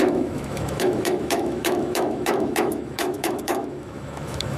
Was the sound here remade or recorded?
remade